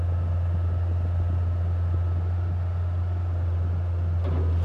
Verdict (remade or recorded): recorded